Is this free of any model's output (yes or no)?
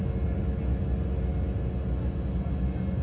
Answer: yes